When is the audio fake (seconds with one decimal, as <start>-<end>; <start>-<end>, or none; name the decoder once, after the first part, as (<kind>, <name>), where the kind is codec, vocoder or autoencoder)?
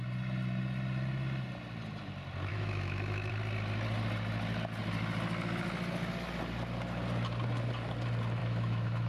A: 2.5-3.3 (autoencoder, DAC-VAE); 8.4-9.1